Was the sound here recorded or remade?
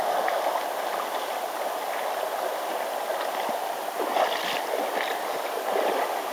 recorded